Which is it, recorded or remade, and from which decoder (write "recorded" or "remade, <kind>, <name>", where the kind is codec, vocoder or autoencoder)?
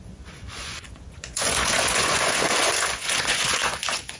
remade, vocoder, Vocos